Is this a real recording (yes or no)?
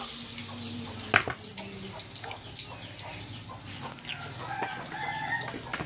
yes